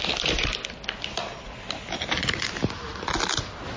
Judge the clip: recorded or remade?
recorded